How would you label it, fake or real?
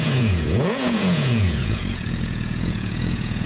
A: fake